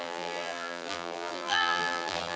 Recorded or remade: remade